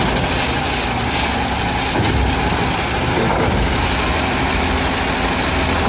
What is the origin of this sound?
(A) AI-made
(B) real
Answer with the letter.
B